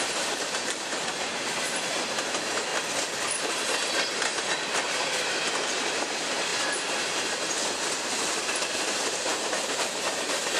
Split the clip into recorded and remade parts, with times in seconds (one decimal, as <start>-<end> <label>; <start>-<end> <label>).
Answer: 0.0-2.7 remade; 2.7-3.4 recorded; 3.4-6.5 remade; 6.5-8.0 recorded; 8.0-10.6 remade